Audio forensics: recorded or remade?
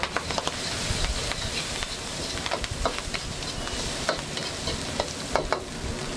recorded